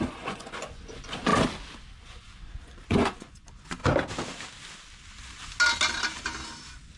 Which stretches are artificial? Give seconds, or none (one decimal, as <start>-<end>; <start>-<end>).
0.0-1.3; 2.0-3.8